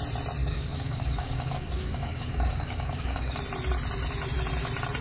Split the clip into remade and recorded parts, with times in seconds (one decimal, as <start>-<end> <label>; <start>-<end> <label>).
0.0-0.4 recorded; 0.4-3.4 remade; 3.4-5.0 recorded